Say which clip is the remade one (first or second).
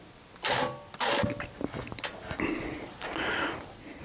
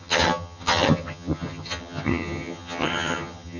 second